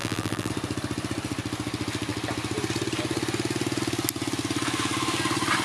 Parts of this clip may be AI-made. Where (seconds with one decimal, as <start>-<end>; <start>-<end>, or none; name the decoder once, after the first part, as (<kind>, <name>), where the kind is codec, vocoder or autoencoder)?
0.0-0.5 (vocoder, BigVGAN v2)